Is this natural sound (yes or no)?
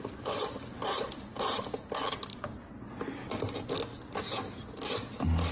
yes